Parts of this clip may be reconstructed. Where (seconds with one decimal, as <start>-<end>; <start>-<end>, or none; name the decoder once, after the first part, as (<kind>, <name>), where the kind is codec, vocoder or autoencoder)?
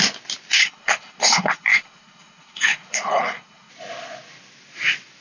0.6-3.7 (codec, HILCodec)